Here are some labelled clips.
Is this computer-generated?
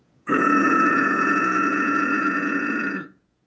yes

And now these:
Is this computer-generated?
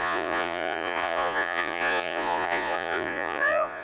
yes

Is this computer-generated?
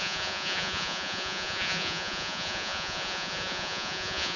yes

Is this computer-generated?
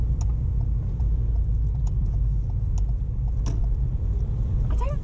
no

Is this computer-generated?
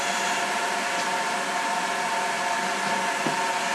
no